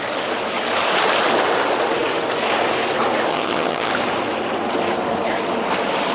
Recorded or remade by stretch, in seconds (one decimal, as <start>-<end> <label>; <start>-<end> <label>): 0.0-3.3 recorded; 3.3-3.9 remade; 3.9-6.1 recorded